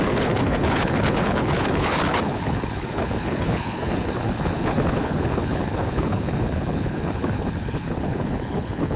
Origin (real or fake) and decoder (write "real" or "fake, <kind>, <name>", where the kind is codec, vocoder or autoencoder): fake, codec, HILCodec